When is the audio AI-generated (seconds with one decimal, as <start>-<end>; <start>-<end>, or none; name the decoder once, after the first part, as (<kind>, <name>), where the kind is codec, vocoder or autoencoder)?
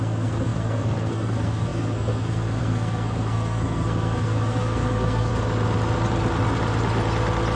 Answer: 0.0-5.3 (codec, SNAC)